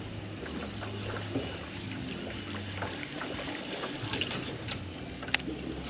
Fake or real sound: real